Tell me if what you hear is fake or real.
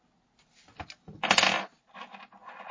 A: real